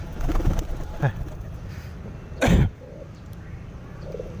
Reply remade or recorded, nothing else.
remade